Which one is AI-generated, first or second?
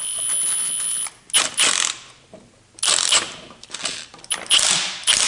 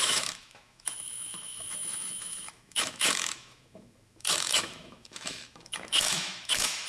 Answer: second